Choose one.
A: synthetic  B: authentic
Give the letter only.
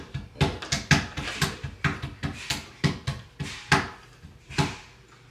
B